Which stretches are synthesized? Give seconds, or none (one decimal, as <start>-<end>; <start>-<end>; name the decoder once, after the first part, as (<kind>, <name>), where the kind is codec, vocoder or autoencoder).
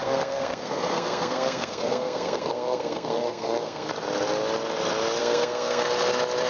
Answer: 0.0-3.9 (codec, SNAC); 5.2-5.8